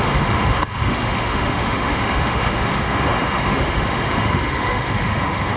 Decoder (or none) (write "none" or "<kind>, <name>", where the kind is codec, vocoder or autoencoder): autoencoder, DAC-VAE